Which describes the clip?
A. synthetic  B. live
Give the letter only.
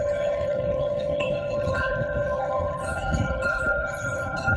A